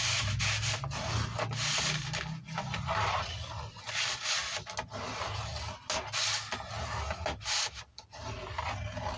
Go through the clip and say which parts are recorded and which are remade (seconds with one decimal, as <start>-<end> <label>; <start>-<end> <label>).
0.0-9.2 recorded